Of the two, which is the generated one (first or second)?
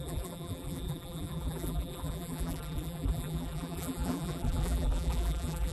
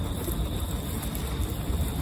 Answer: first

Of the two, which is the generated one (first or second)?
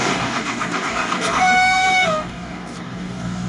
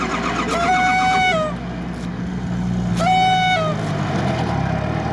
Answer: first